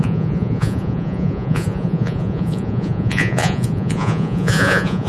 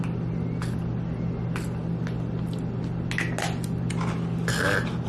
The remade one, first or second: first